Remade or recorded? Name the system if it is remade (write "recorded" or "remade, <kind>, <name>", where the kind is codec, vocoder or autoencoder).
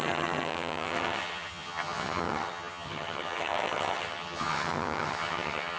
remade, vocoder, HiFi-GAN